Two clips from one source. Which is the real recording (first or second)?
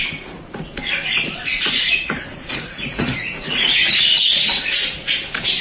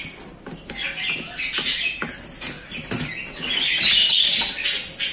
second